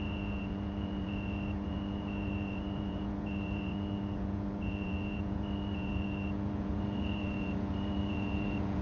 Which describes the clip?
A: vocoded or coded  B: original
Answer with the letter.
A